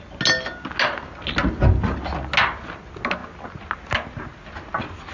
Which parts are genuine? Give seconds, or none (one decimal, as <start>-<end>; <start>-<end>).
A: 0.0-5.1